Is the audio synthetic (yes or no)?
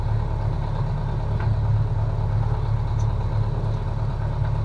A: no